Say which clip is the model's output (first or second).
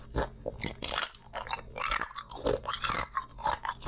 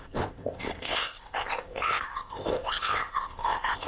second